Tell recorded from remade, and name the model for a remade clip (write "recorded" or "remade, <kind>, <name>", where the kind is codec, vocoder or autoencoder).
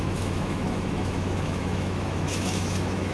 remade, autoencoder, DAC-VAE